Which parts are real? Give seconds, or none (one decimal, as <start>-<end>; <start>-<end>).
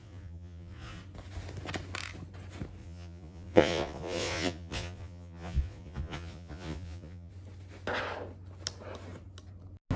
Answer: 1.0-2.8; 7.3-10.0